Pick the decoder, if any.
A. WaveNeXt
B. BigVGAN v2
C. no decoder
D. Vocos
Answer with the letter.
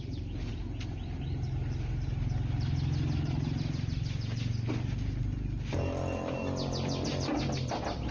C